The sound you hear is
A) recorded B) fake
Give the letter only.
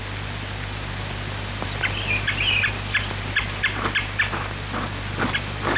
A